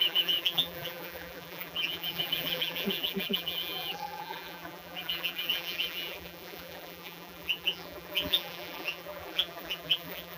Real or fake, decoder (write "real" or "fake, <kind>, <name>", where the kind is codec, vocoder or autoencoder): fake, vocoder, BigVGAN v2